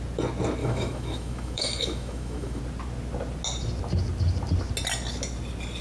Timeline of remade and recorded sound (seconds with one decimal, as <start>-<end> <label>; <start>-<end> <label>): 0.0-0.6 recorded; 0.6-2.6 remade; 2.6-5.8 recorded